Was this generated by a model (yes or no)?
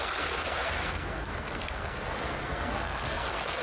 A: yes